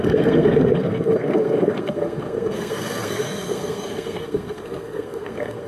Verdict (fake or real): fake